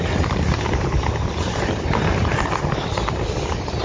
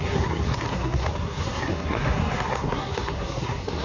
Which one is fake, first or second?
second